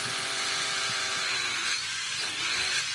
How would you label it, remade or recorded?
remade